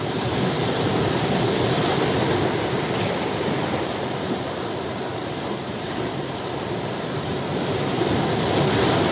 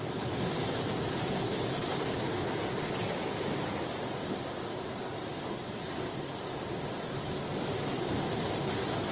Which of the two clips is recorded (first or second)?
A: second